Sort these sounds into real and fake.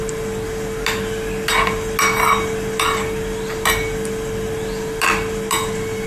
real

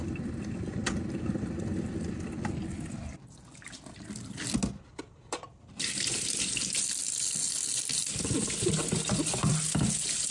real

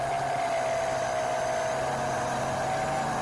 real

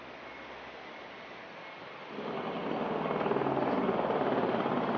real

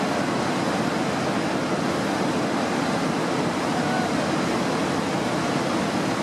real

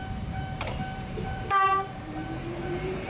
fake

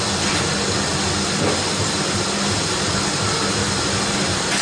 real